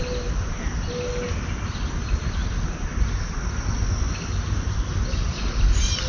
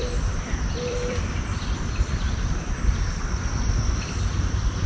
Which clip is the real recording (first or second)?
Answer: first